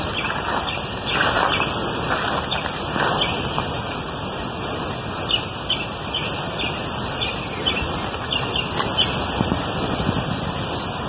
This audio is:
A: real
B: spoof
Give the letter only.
A